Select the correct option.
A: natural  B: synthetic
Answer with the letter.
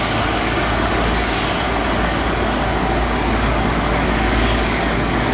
B